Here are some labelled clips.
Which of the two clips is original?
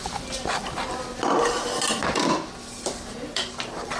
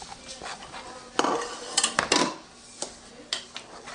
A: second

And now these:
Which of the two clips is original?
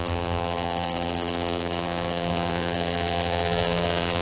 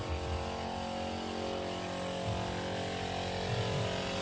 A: second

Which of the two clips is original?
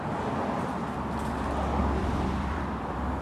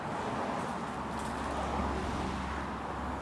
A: second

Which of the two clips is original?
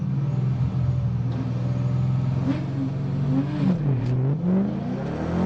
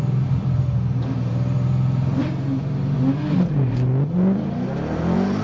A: first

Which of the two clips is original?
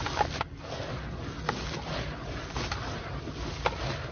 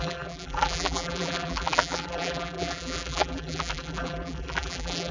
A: first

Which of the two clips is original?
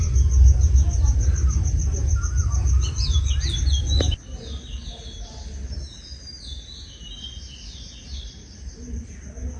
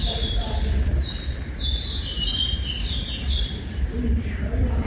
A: first